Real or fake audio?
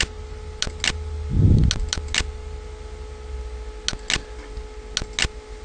real